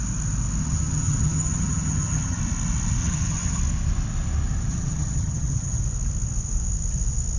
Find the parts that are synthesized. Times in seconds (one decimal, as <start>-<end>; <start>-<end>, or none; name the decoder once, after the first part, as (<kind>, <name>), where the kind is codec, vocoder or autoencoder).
0.6-2.4 (vocoder, HiFi-GAN); 3.0-3.6; 4.7-5.8